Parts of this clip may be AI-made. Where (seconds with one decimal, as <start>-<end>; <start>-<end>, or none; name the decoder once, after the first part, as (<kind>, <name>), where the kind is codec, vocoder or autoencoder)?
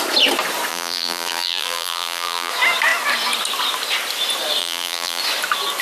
0.7-2.5 (vocoder, BigVGAN v2); 4.6-5.2